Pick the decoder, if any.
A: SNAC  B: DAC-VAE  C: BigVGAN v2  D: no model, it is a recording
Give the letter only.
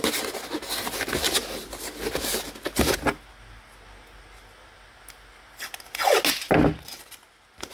D